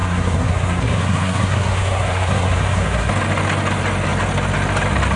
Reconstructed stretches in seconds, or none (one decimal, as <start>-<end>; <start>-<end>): 0.0-3.1